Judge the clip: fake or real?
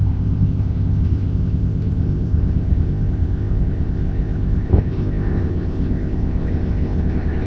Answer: fake